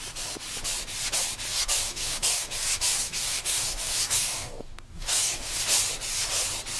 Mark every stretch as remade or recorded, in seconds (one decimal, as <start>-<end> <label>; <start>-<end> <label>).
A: 0.0-1.5 recorded; 1.5-5.6 remade; 5.6-6.8 recorded